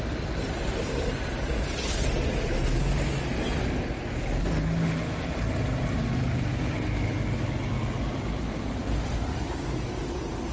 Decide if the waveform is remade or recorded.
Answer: recorded